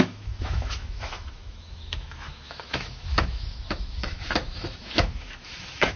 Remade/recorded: remade